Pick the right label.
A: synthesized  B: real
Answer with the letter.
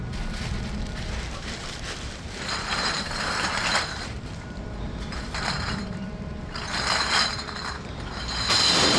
A